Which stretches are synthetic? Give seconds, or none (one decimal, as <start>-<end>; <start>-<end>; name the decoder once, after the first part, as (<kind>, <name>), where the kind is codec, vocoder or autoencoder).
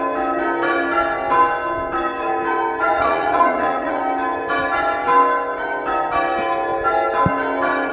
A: 2.8-4.0 (vocoder, Vocos)